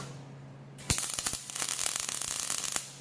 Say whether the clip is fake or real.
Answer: real